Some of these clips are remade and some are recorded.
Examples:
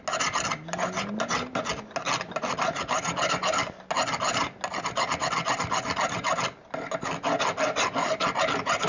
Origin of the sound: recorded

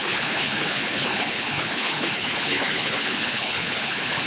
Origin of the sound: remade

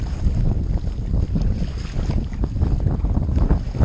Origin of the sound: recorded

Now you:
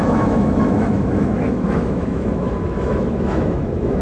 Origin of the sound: remade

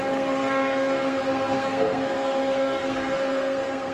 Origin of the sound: remade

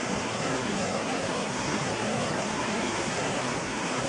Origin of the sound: remade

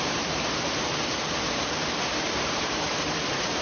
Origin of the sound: remade